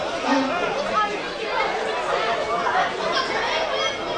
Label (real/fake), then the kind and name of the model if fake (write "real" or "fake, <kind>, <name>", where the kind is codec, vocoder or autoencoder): real